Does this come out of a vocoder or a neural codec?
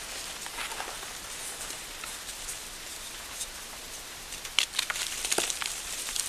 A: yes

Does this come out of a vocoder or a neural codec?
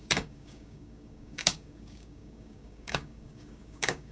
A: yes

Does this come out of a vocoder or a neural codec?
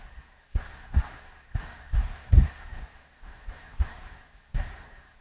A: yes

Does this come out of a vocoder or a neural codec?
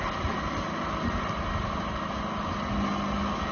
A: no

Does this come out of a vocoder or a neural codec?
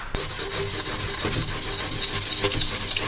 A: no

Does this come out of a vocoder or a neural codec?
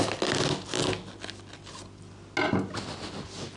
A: no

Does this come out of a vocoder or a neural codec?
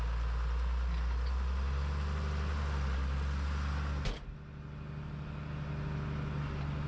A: no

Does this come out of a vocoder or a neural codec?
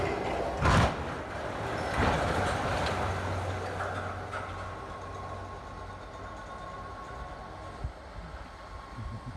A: no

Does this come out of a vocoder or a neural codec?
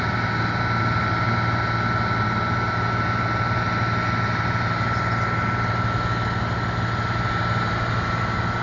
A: no